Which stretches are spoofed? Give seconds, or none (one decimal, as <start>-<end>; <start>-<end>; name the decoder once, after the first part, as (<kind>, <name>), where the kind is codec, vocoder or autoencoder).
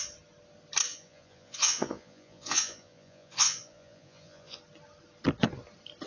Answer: 0.9-4.6 (vocoder, Vocos)